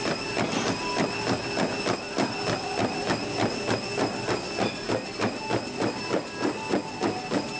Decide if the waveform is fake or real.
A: real